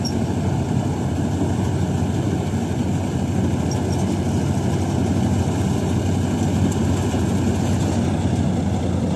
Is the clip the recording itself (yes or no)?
yes